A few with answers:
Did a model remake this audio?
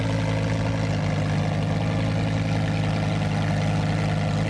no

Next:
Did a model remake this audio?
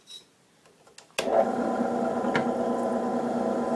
no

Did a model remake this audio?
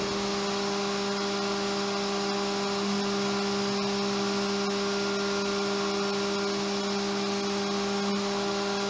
no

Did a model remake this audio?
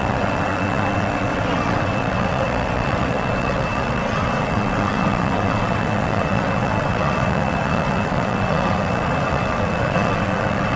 yes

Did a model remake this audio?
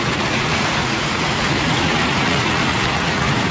yes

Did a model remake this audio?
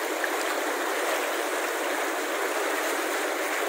no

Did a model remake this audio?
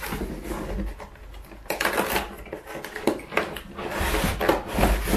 no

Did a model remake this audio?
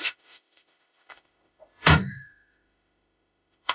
yes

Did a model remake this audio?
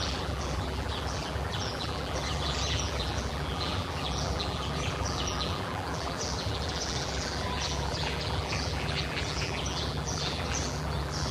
yes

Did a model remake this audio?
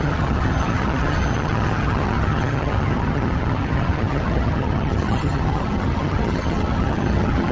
yes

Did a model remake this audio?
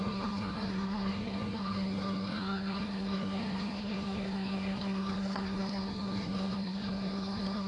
yes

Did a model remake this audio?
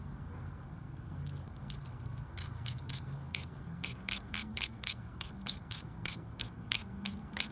yes